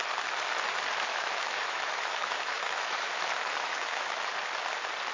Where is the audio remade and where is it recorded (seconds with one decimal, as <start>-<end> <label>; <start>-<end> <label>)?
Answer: 0.0-1.1 recorded; 1.1-4.2 remade; 4.2-5.1 recorded